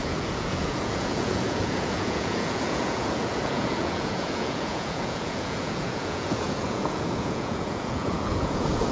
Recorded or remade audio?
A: remade